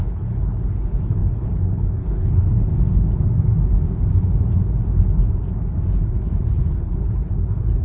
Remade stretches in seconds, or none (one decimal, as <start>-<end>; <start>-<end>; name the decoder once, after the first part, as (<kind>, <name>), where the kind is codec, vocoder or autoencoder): 0.0-2.7 (codec, HILCodec); 6.0-7.8